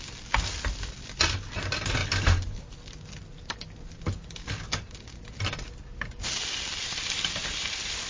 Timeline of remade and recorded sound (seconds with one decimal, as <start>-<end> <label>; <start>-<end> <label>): 0.0-2.0 recorded; 2.0-2.8 remade; 2.8-7.4 recorded; 7.4-8.1 remade